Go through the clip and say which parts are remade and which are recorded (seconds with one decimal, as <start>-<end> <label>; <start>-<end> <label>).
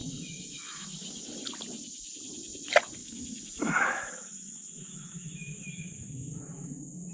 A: 0.0-1.2 remade; 1.2-3.0 recorded; 3.0-7.1 remade